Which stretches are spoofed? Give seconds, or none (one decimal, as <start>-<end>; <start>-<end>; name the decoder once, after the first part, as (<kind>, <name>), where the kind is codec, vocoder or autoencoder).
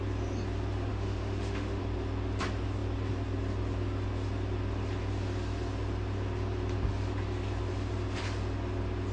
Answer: 0.9-1.8 (autoencoder, DAC-VAE)